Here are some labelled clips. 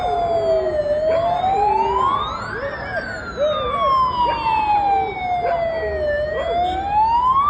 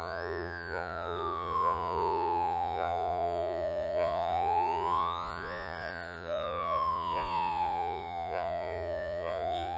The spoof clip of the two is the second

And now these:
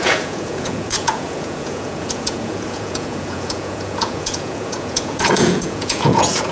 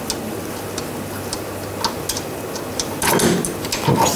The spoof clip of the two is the first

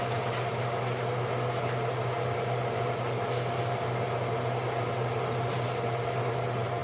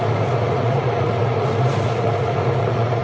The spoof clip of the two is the second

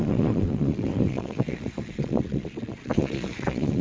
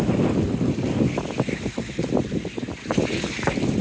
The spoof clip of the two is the first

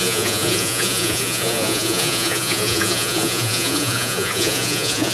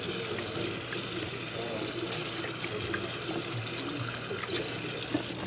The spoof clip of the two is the first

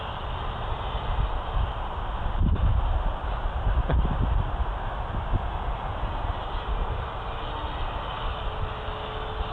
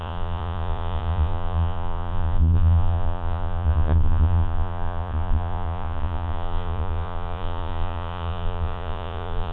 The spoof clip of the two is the second